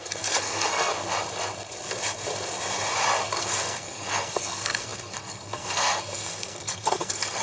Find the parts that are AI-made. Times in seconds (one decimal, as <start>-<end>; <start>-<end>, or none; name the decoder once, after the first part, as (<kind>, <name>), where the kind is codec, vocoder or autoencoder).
0.0-0.9 (codec, SNAC); 3.4-7.4